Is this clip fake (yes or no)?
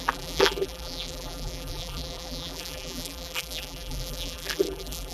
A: yes